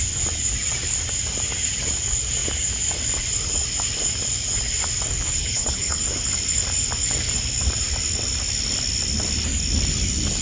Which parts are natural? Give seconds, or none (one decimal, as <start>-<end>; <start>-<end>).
0.0-5.4; 6.0-10.4